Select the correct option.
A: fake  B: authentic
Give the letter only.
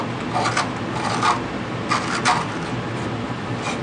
B